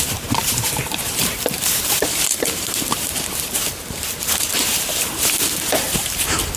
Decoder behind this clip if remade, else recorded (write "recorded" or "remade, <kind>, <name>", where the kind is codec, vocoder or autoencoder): remade, vocoder, BigVGAN v2